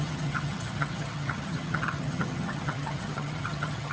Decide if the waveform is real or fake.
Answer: fake